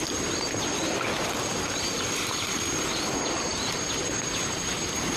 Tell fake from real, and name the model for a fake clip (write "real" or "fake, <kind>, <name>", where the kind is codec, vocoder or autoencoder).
real